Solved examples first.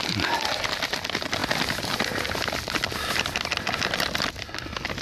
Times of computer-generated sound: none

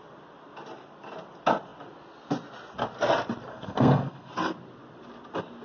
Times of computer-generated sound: 3.5-4.3 (codec, SNAC)